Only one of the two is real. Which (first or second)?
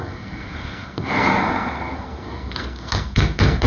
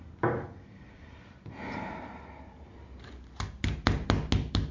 second